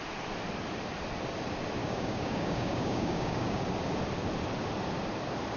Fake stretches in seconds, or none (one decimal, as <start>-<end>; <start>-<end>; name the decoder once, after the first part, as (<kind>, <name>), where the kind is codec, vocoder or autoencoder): 1.8-3.6 (codec, DAC)